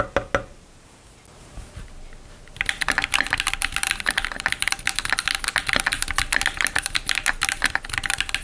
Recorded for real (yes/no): yes